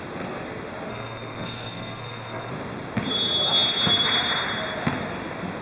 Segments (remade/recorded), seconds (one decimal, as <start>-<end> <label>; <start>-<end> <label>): 0.0-0.9 recorded; 0.9-2.5 remade; 2.5-5.6 recorded